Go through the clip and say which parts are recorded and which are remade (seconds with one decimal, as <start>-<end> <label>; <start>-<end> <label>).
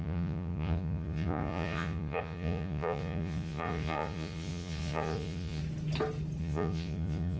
0.0-5.6 remade; 5.6-6.4 recorded; 6.4-7.4 remade